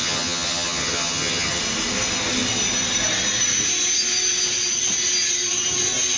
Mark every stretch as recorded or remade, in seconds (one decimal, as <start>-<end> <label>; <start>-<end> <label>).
0.0-1.6 remade; 1.6-6.2 recorded